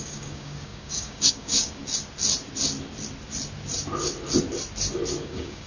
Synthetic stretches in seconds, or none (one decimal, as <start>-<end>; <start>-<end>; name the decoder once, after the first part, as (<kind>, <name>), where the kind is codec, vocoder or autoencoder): 0.0-1.8 (codec, DAC); 5.2-5.7